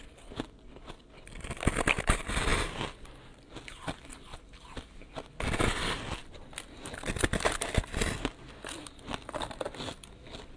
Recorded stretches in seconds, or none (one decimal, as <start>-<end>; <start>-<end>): 0.0-10.6